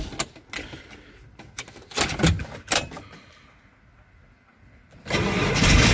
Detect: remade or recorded recorded